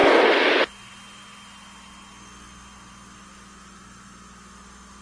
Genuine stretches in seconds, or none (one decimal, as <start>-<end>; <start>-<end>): 0.0-5.0